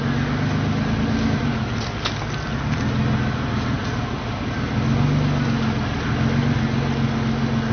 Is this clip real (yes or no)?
yes